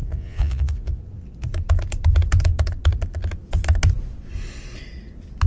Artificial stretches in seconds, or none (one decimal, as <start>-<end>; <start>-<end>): 0.0-1.0